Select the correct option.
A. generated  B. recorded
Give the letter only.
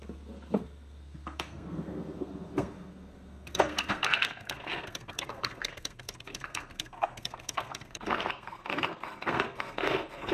A